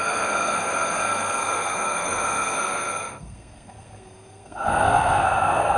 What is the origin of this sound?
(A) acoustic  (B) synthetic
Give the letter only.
B